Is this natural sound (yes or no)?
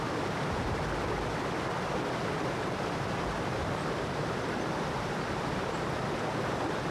yes